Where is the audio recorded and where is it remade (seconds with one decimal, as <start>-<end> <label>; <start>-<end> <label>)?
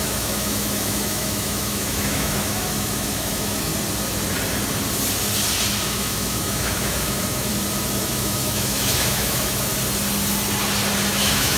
0.0-3.7 remade; 3.7-5.8 recorded; 5.8-7.5 remade; 7.5-8.0 recorded; 8.0-9.7 remade; 9.7-11.1 recorded; 11.1-11.6 remade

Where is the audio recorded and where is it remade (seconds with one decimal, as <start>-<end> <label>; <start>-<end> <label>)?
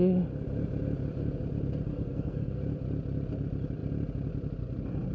0.0-1.9 recorded; 1.9-2.6 remade; 2.6-5.1 recorded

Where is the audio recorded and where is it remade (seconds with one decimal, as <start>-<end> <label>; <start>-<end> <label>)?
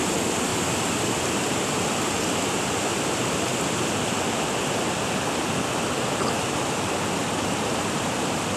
0.0-0.5 recorded; 0.5-2.4 remade; 2.4-8.6 recorded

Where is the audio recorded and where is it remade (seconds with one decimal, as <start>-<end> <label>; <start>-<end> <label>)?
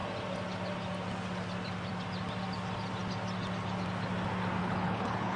0.0-4.6 recorded; 4.6-5.4 remade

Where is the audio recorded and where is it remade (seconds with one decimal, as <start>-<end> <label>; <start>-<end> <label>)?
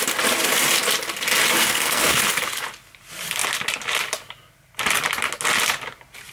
0.0-1.6 recorded; 1.6-2.2 remade; 2.2-6.3 recorded